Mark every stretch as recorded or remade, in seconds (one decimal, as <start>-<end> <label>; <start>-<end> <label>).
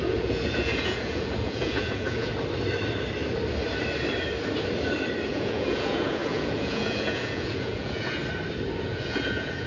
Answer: 0.0-2.3 remade; 2.3-5.3 recorded; 5.3-8.2 remade; 8.2-8.8 recorded; 8.8-9.7 remade